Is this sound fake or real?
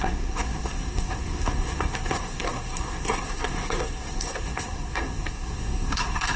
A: fake